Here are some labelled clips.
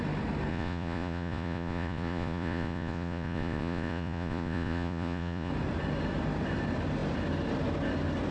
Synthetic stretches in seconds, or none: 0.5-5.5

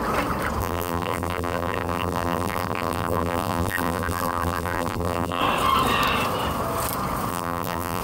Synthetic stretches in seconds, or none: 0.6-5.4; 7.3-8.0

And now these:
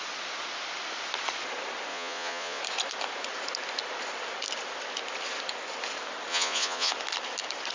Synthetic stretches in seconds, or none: 1.9-2.6; 6.3-6.9

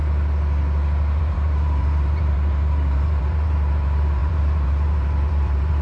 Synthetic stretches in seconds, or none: 1.2-5.8

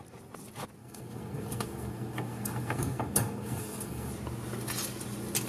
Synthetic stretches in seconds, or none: 0.8-4.1

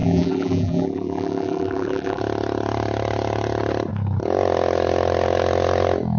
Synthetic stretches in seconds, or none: 0.0-2.2